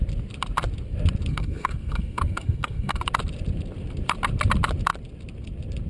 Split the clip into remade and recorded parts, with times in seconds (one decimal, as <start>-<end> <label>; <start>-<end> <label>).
0.0-1.3 recorded; 1.3-3.0 remade; 3.0-5.9 recorded